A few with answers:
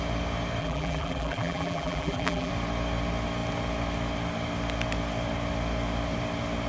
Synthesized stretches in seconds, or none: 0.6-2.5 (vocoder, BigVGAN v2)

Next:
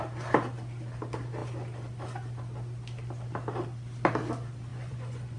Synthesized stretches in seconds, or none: 4.7-5.4 (vocoder, Vocos)

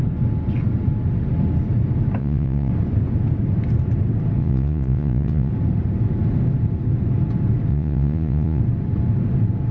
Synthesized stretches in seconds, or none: 2.2-2.7 (vocoder, Vocos); 4.4-5.5; 7.7-8.6

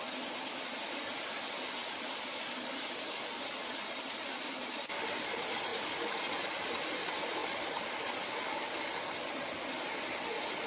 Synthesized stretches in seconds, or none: 1.8-2.9 (vocoder, BigVGAN v2)

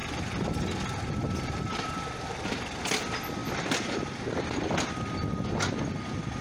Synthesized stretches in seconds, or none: 0.0-2.2 (vocoder, BigVGAN v2); 3.4-4.0

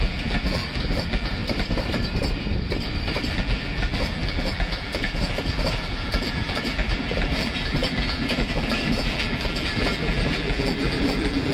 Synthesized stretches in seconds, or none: 0.0-1.4 (vocoder, BigVGAN v2); 3.3-11.5

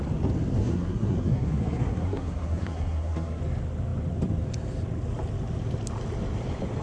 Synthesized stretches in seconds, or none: 0.6-3.4 (codec, SNAC)

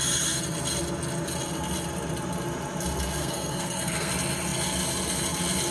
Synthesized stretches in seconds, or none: 3.2-4.1 (codec, SNAC)